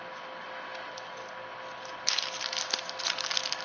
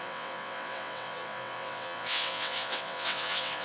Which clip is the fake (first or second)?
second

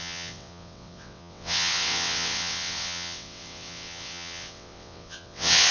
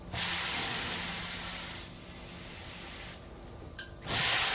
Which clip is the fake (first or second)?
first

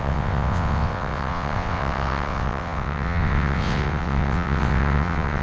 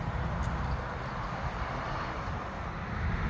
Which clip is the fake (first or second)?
first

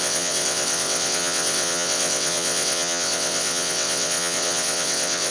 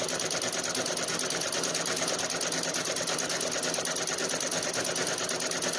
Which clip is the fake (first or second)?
first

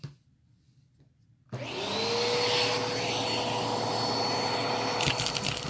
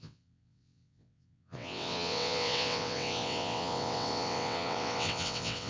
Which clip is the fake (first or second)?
second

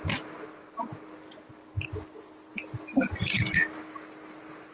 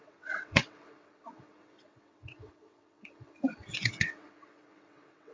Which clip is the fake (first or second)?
second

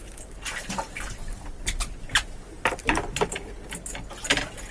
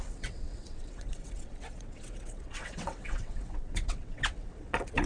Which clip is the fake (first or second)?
second